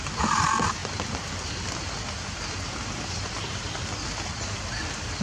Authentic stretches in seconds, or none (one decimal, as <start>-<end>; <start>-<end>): 0.0-5.2